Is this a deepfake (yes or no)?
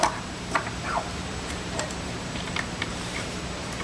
yes